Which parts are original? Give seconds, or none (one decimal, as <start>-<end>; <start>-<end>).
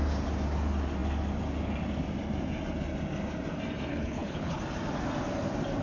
0.0-3.9; 4.6-5.8